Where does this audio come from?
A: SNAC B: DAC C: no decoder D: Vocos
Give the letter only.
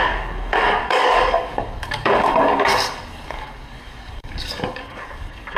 B